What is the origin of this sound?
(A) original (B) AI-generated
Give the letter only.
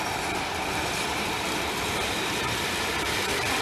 B